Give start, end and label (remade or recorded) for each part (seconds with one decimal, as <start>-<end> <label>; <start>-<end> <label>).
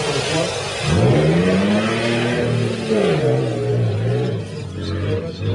0.0-5.5 recorded